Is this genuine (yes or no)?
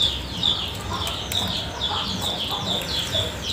yes